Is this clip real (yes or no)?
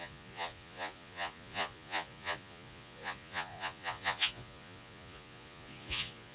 no